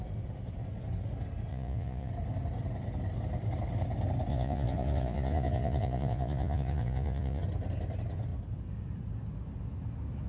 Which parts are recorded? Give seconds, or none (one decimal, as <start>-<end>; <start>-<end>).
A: 0.0-1.5; 2.1-4.3; 7.4-10.3